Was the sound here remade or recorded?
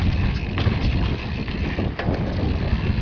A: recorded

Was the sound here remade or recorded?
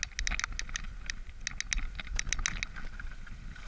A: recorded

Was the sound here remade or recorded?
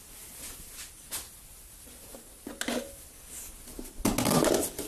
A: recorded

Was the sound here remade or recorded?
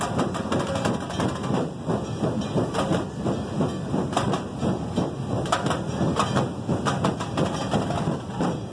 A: recorded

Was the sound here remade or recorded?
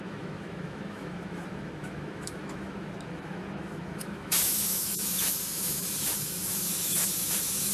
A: remade